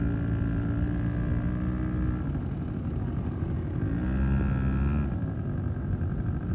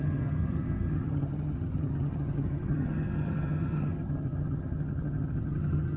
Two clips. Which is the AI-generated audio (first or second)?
second